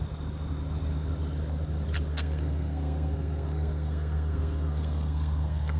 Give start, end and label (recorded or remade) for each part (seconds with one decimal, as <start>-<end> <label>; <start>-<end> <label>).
0.0-2.1 recorded; 2.1-5.8 remade